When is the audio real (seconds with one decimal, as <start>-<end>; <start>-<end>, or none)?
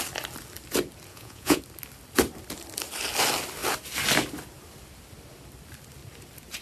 0.0-1.1; 1.6-6.6